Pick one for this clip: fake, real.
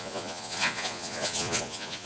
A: fake